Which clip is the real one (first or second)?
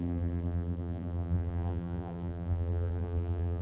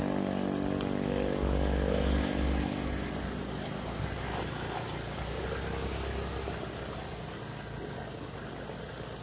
second